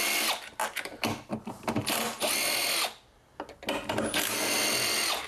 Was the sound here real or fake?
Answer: real